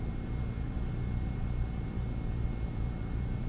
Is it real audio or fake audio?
real